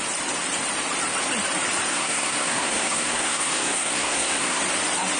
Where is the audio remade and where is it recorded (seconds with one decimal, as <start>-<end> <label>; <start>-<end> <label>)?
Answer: 0.0-1.9 recorded; 1.9-4.6 remade; 4.6-5.2 recorded

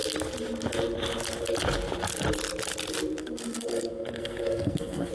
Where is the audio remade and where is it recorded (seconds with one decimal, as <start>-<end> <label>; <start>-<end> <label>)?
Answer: 0.0-3.2 recorded; 3.2-5.1 remade

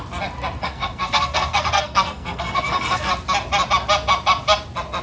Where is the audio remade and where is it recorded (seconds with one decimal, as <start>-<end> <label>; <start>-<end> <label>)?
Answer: 0.0-0.6 recorded; 0.6-3.1 remade; 3.1-5.0 recorded

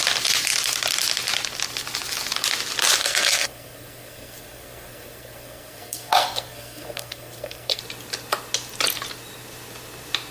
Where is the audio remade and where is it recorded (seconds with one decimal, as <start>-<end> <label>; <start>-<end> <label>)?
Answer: 0.0-3.0 recorded; 3.0-7.8 remade; 7.8-10.3 recorded

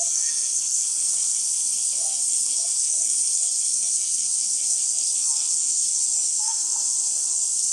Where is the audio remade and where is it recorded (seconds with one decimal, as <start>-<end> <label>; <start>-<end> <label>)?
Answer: 0.0-7.7 remade

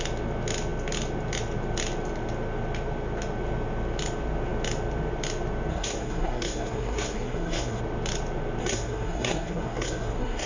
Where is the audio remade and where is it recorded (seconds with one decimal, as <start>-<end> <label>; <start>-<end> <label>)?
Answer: 0.0-5.7 recorded; 5.7-7.8 remade; 7.8-8.6 recorded; 8.6-10.5 remade